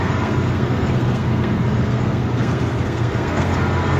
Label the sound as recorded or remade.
remade